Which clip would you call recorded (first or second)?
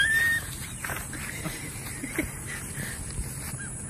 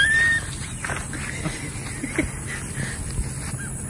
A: second